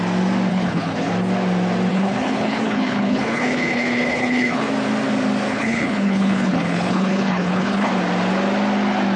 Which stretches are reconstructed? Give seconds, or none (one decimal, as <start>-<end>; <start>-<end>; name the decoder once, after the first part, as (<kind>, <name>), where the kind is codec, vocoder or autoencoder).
0.5-1.1 (codec, HILCodec); 1.9-4.7; 5.5-7.9